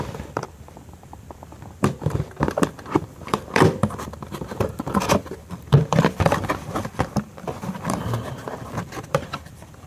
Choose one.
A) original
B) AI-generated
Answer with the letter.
B